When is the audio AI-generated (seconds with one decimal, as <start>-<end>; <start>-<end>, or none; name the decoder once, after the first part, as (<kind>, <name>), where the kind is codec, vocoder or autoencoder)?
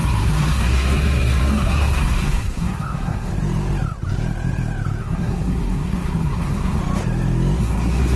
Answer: 0.0-3.3 (codec, SNAC); 5.0-6.8; 7.6-8.2